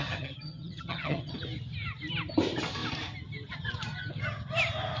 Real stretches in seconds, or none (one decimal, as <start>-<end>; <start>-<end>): 1.3-5.0